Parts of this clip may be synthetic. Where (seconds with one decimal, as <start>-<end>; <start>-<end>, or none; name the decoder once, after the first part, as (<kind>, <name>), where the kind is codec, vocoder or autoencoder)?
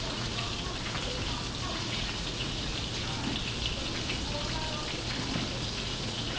0.0-0.5 (vocoder, Vocos); 1.7-2.7; 5.7-6.4